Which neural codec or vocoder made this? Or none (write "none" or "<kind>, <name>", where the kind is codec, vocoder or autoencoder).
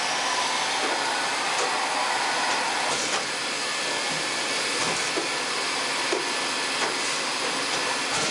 none